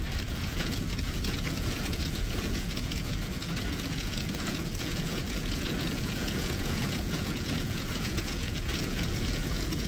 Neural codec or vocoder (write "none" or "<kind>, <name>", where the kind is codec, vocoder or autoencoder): vocoder, Vocos